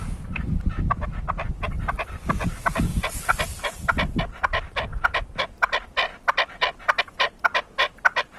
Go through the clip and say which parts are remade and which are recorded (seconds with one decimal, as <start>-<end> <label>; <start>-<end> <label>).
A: 0.0-8.4 recorded